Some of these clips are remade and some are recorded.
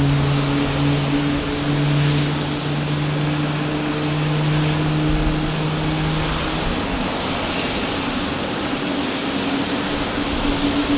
recorded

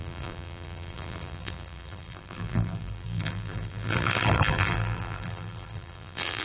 remade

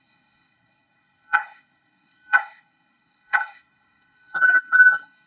remade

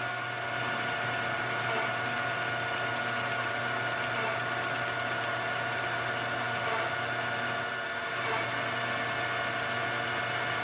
recorded